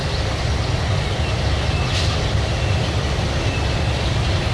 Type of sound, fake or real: real